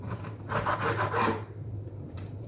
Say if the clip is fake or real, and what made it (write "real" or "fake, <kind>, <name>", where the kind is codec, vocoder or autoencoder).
fake, vocoder, BigVGAN v2